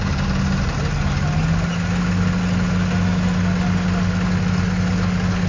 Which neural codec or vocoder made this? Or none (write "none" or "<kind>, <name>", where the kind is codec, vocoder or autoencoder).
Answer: none